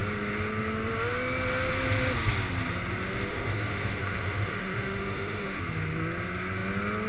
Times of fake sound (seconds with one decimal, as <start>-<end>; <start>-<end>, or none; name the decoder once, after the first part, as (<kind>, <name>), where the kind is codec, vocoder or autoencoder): 3.3-5.6 (autoencoder, DAC-VAE)